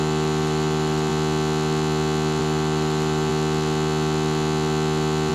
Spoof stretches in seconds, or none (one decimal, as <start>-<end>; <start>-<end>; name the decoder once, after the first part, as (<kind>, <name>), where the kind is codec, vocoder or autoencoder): 0.0-1.1 (vocoder, BigVGAN v2); 2.4-3.3